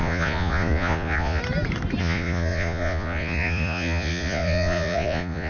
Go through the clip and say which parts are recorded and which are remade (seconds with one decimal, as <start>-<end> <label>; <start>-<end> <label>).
0.0-1.4 remade; 1.4-2.0 recorded; 2.0-5.5 remade